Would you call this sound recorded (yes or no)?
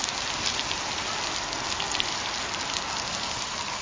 yes